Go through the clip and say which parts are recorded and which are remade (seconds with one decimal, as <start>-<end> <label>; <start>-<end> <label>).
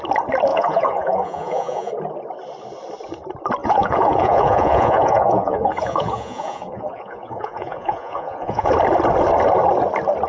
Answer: 0.0-0.5 recorded; 0.5-1.9 remade; 1.9-3.6 recorded; 3.6-8.7 remade; 8.7-10.3 recorded